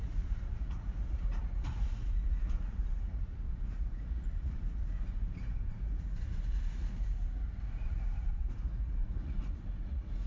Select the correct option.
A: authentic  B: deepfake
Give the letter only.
B